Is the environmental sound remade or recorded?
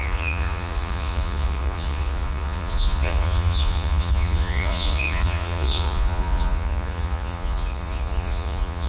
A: remade